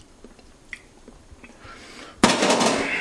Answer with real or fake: real